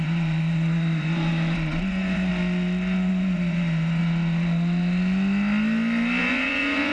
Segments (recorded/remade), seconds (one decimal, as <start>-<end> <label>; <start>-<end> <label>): 0.0-2.3 remade; 2.3-3.1 recorded; 3.1-4.0 remade; 4.0-6.2 recorded; 6.2-6.9 remade